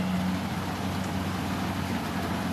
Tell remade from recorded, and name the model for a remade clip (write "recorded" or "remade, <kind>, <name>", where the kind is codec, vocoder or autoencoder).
recorded